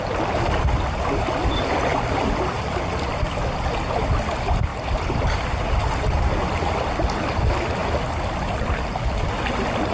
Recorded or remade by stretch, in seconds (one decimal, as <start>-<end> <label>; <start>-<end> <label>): 0.0-1.9 recorded; 1.9-2.8 remade; 2.8-4.7 recorded; 4.7-5.3 remade; 5.3-9.9 recorded